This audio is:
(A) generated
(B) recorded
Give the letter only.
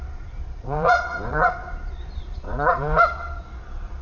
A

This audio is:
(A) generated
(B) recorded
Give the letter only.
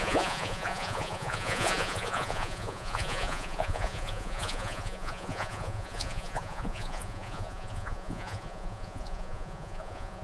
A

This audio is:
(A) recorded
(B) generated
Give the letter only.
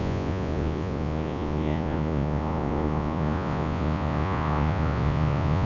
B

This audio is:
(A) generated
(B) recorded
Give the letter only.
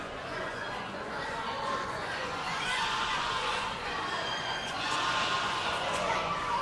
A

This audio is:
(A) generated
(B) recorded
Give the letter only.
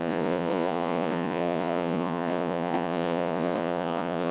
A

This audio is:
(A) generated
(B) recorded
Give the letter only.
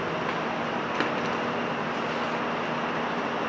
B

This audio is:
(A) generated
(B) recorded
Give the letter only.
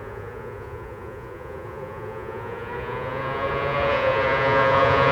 A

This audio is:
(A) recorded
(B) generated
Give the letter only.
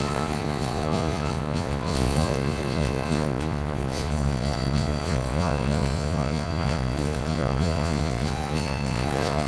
B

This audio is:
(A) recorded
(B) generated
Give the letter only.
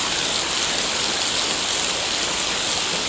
A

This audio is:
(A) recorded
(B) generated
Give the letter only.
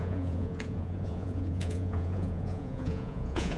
B